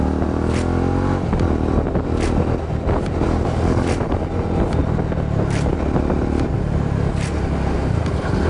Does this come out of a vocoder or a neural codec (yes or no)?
no